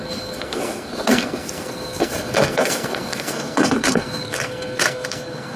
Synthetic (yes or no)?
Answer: yes